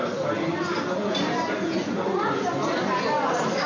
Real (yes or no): yes